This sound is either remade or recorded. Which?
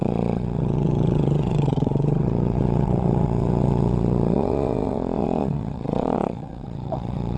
remade